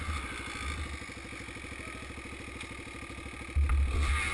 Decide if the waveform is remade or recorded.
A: recorded